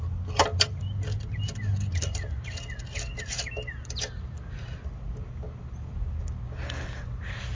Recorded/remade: recorded